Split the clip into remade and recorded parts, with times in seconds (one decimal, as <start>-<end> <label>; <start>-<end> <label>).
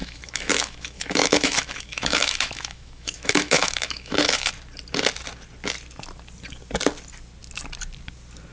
0.0-4.5 remade; 4.5-8.5 recorded